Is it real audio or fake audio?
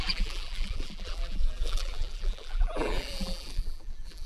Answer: fake